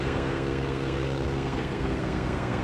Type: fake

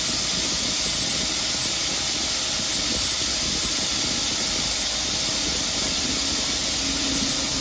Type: real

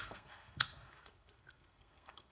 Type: fake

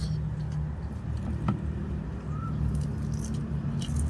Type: real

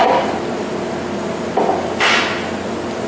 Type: real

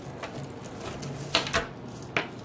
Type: real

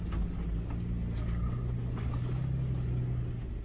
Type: real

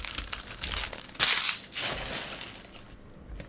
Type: real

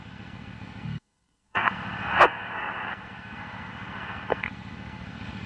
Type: fake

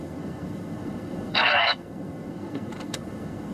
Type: fake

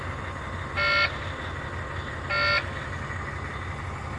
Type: real